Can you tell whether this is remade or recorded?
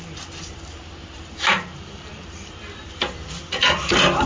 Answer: remade